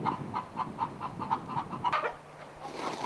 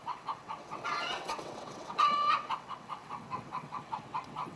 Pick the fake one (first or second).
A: second